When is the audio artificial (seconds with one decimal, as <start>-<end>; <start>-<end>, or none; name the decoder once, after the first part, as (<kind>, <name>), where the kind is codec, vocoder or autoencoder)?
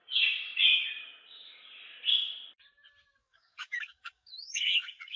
3.2-5.2 (codec, DAC)